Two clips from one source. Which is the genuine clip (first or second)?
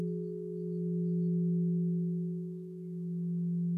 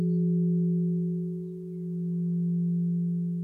second